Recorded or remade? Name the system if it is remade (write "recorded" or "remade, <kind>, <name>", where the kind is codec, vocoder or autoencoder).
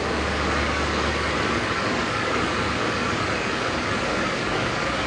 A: remade, codec, DAC